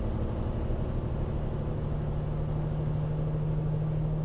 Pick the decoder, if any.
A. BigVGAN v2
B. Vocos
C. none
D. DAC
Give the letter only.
C